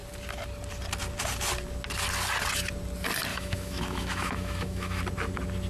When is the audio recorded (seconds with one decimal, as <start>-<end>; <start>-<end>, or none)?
0.0-3.3; 5.0-5.7